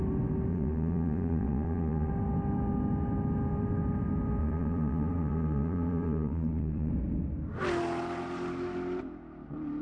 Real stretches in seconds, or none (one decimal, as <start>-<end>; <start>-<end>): 0.0-0.5; 2.1-4.4; 6.9-9.8